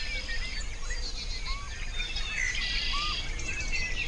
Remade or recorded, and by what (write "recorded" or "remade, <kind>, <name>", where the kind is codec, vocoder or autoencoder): recorded